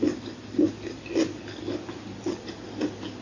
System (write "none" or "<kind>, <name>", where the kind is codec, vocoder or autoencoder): none